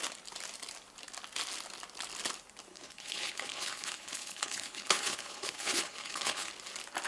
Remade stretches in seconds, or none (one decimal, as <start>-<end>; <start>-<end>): 2.7-6.5